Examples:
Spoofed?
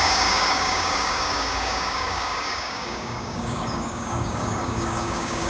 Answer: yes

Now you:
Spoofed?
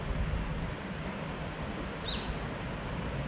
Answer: no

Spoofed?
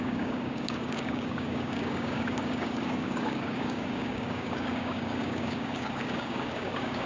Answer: yes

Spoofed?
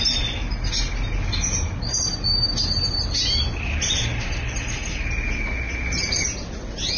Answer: no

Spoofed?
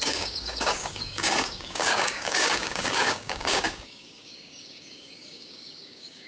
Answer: yes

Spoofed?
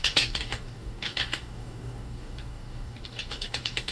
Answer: yes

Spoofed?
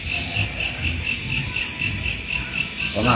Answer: no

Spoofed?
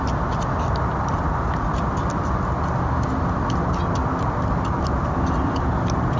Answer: no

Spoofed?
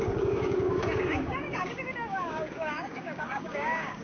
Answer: yes